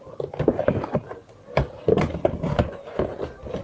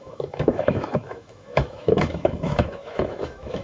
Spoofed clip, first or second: second